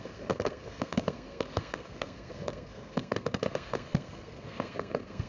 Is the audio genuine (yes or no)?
no